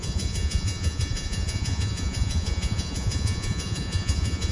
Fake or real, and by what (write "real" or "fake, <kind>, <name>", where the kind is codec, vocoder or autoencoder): fake, vocoder, Vocos